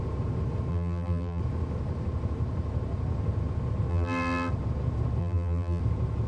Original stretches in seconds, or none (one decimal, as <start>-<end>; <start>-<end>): 0.0-0.7; 1.4-3.9; 4.5-5.2; 5.8-6.3